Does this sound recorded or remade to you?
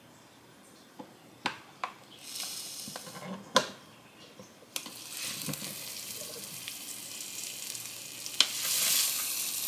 recorded